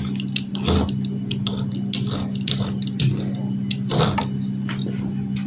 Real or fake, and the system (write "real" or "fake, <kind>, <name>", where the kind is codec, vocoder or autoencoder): real